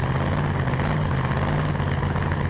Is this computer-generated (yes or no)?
no